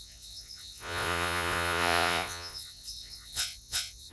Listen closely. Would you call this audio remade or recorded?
remade